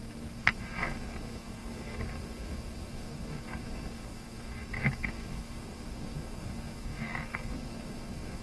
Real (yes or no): no